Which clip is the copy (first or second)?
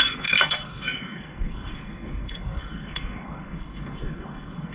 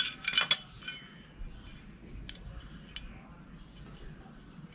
first